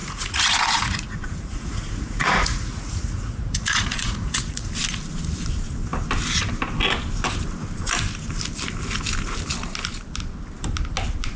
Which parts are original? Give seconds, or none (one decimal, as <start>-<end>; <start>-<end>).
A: 4.7-11.4